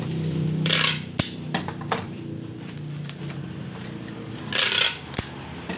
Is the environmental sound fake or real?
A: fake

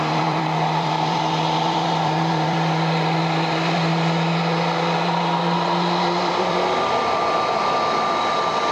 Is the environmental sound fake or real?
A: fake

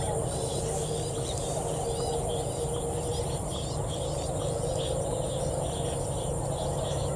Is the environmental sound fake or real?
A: real